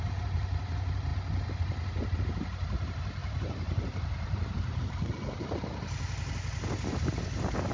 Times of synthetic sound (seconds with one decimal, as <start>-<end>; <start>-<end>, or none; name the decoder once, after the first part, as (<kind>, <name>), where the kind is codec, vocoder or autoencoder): 3.2-5.7 (vocoder, BigVGAN v2)